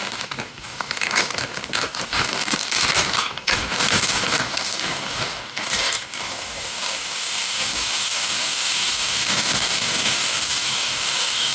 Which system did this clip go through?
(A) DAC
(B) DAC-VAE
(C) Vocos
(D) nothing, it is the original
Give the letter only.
A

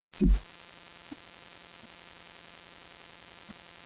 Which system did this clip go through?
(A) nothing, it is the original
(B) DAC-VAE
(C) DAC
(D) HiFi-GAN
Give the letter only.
A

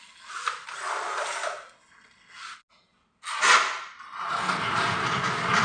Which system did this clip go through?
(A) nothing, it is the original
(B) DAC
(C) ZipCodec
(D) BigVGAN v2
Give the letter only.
A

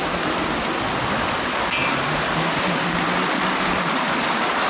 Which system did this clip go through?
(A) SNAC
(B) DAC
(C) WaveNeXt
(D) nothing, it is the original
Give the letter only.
D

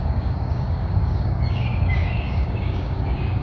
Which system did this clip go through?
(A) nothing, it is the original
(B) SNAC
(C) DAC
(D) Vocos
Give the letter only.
C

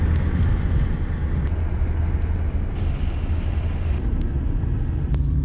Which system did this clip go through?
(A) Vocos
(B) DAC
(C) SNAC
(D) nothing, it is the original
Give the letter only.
D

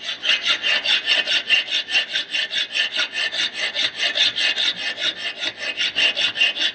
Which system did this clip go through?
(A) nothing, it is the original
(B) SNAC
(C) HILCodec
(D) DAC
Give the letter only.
A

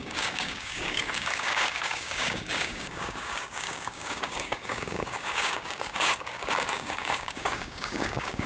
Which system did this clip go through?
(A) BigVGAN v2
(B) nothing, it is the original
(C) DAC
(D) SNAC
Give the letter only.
C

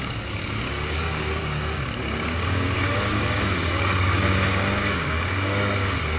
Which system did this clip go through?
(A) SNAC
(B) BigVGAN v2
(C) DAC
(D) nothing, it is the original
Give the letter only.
C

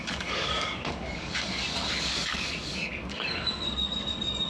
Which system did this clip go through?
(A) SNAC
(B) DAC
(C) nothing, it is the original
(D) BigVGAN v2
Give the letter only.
B